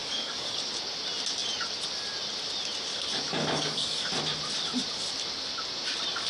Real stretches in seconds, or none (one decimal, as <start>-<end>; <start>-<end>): 0.7-2.9; 4.1-6.3